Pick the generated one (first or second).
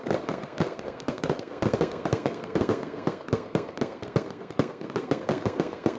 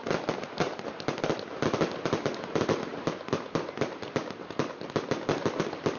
first